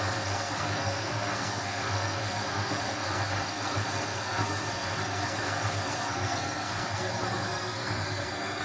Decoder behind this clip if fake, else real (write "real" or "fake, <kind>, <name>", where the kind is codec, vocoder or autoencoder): fake, codec, SNAC